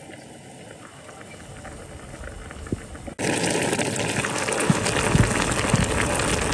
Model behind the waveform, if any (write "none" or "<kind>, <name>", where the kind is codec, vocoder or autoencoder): none